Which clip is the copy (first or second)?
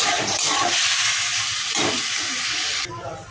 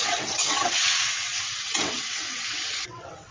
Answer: second